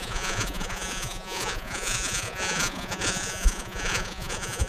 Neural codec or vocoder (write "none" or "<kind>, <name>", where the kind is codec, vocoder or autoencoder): vocoder, Vocos